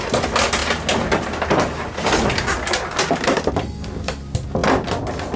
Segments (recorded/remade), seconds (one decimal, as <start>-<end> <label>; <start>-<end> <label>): 0.0-5.4 recorded